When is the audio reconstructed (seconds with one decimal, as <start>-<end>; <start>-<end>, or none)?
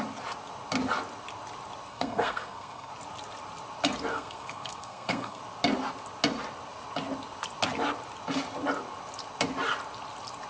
1.9-2.9; 4.1-5.4